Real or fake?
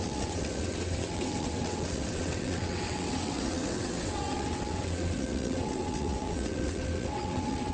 fake